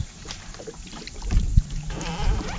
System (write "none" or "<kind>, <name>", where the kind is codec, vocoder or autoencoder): vocoder, BigVGAN v2